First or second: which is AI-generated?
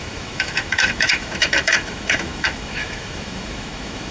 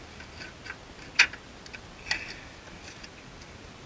first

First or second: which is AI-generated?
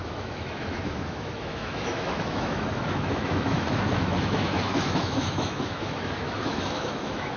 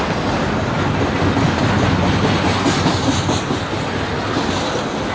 first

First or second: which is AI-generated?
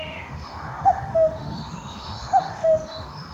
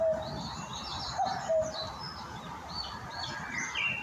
first